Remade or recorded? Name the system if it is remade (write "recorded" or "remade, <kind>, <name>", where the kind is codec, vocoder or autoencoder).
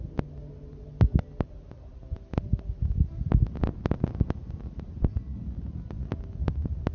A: recorded